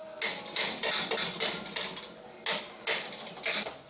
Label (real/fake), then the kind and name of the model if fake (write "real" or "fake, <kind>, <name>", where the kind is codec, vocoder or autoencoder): real